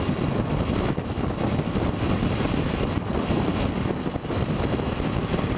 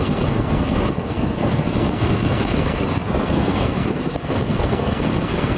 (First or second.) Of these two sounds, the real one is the first